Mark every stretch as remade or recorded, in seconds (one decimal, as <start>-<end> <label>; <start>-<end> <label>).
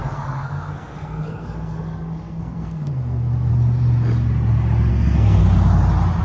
0.0-3.5 remade; 3.5-4.9 recorded; 4.9-5.4 remade; 5.4-6.2 recorded